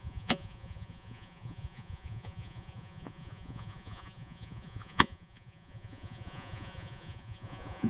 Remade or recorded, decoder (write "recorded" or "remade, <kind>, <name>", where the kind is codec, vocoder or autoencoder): remade, vocoder, Vocos